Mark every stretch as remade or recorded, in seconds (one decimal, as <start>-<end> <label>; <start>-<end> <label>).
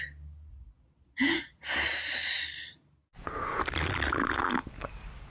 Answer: 0.0-0.5 recorded; 0.5-1.6 remade; 1.6-5.3 recorded